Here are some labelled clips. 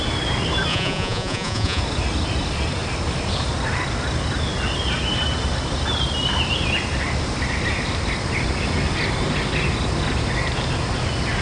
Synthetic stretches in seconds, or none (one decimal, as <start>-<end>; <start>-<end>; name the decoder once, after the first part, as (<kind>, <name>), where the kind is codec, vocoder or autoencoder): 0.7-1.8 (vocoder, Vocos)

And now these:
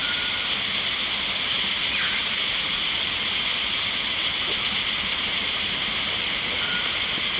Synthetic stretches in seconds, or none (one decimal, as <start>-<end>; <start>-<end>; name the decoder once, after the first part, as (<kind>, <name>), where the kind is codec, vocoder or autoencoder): 2.2-2.8 (vocoder, Vocos)

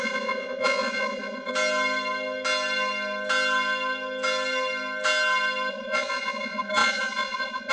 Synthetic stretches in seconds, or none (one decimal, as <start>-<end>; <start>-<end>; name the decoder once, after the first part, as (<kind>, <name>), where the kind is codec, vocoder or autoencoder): 0.0-1.5 (vocoder, Vocos); 5.7-7.7